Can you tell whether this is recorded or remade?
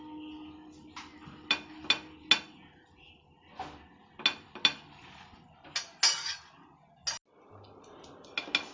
recorded